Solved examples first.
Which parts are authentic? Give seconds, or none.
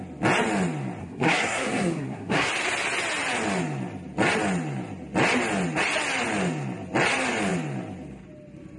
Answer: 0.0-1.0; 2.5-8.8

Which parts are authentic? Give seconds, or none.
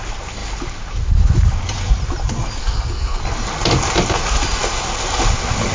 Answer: 0.0-2.6; 3.2-5.7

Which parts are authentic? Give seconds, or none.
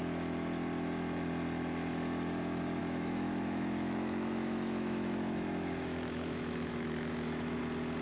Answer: 0.0-2.8; 7.6-8.0